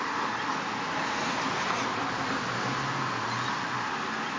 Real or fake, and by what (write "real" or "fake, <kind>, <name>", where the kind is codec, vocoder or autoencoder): real